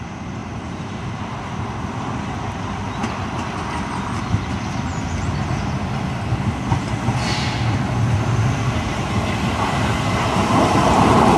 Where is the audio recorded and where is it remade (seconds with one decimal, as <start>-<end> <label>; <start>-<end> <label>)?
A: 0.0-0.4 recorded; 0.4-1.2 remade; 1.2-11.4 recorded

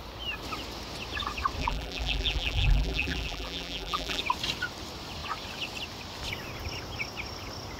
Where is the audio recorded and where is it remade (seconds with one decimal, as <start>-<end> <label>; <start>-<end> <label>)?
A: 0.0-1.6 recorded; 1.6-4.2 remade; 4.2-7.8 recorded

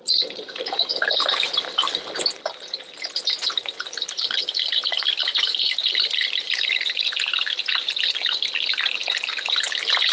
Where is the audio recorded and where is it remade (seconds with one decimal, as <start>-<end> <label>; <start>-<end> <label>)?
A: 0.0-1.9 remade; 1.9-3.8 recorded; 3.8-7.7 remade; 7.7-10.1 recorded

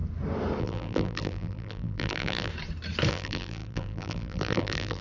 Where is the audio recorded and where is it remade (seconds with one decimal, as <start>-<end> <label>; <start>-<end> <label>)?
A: 0.0-0.6 recorded; 0.6-2.5 remade; 2.5-3.1 recorded; 3.1-5.0 remade

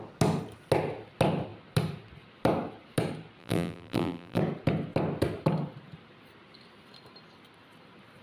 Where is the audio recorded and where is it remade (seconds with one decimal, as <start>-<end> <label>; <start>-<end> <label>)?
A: 0.0-3.4 recorded; 3.4-4.4 remade; 4.4-8.2 recorded

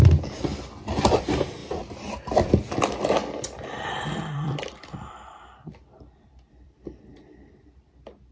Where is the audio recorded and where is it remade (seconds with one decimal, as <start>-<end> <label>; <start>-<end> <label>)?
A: 0.0-3.2 recorded; 3.2-7.9 remade; 7.9-8.3 recorded